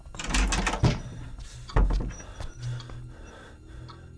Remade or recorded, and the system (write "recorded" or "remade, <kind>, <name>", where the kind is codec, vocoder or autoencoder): recorded